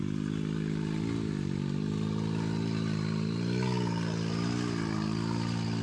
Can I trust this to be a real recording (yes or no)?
yes